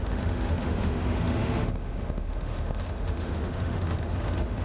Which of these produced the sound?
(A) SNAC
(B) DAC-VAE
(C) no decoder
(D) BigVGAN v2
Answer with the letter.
B